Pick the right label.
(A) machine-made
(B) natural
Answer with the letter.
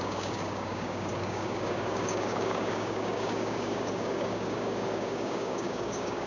A